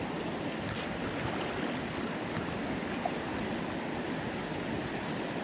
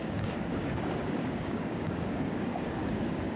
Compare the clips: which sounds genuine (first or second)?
first